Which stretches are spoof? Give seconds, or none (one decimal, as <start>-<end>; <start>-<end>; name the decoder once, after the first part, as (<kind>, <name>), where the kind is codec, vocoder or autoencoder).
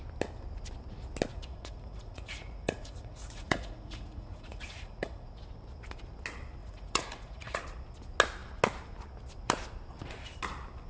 1.3-5.4 (vocoder, Vocos); 6.6-7.6